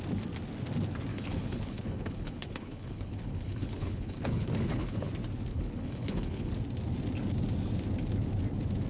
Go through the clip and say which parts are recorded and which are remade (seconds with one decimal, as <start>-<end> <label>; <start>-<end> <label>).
0.0-1.1 recorded; 1.1-5.1 remade; 5.1-5.5 recorded; 5.5-6.5 remade; 6.5-8.9 recorded